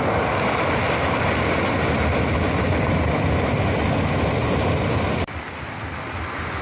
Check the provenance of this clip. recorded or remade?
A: recorded